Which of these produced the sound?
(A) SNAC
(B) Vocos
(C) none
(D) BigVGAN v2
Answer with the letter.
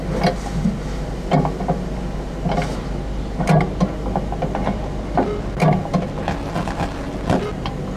C